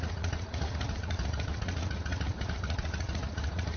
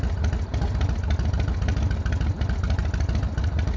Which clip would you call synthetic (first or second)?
first